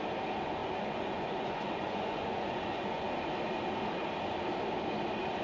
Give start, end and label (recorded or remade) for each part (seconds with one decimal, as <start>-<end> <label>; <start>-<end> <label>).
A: 0.0-0.6 recorded; 0.6-3.1 remade; 3.1-5.4 recorded